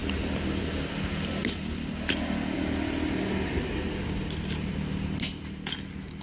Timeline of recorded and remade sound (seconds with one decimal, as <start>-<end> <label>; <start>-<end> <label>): 0.0-6.2 recorded